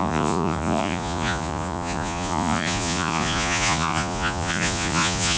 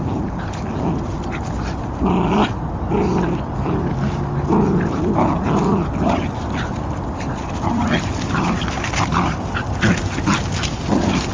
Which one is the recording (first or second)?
second